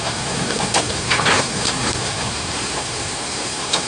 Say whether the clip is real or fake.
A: fake